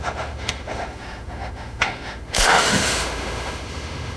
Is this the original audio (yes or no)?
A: no